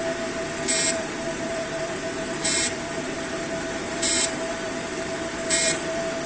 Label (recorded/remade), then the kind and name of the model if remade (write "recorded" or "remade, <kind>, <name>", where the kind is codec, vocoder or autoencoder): remade, vocoder, BigVGAN v2